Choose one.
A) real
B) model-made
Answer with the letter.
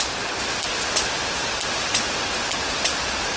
A